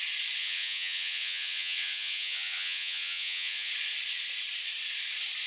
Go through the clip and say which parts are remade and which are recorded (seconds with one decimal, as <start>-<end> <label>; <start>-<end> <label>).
0.0-0.4 recorded; 0.4-3.7 remade; 3.7-5.5 recorded